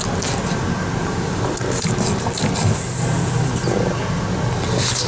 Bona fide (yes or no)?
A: yes